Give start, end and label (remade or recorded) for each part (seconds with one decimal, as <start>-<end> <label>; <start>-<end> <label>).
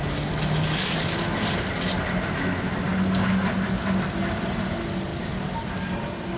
0.0-5.1 recorded; 5.1-6.0 remade; 6.0-6.4 recorded